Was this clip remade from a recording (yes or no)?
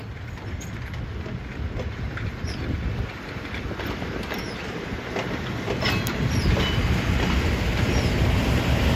no